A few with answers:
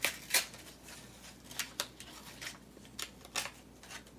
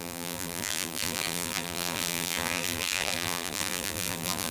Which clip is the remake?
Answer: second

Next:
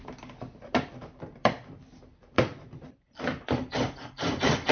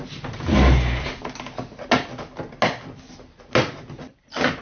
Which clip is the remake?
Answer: first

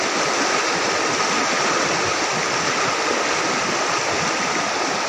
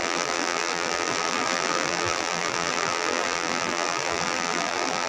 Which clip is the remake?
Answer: second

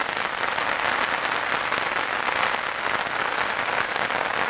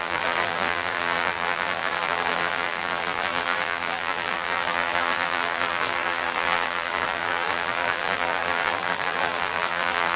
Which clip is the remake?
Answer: second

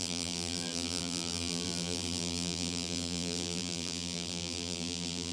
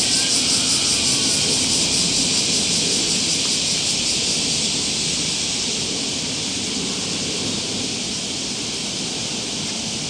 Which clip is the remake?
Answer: first